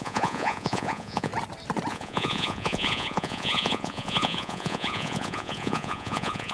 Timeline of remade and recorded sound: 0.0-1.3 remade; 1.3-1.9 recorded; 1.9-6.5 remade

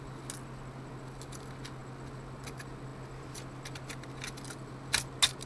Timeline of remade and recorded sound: 0.0-5.5 recorded

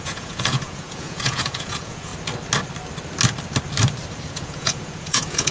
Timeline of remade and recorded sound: 0.0-2.1 remade; 2.1-4.3 recorded; 4.3-5.5 remade

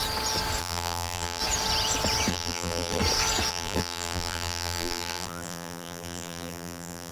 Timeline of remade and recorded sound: 0.0-0.6 recorded; 0.6-1.4 remade; 1.4-2.3 recorded; 2.3-3.0 remade; 3.0-3.5 recorded; 3.5-7.1 remade

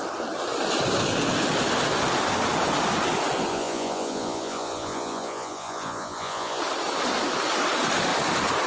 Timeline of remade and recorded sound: 0.0-3.5 recorded; 3.5-6.6 remade; 6.6-8.7 recorded

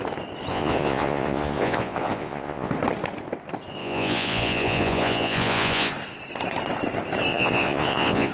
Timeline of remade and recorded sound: 0.0-0.5 recorded; 0.5-2.7 remade; 2.7-3.8 recorded; 3.8-5.9 remade; 5.9-7.3 recorded; 7.3-8.3 remade

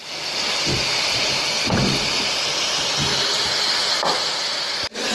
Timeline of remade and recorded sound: 0.0-5.1 recorded

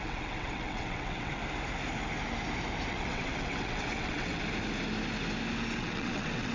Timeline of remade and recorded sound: 0.0-1.4 remade; 1.4-2.9 recorded; 2.9-4.4 remade; 4.4-5.7 recorded; 5.7-6.5 remade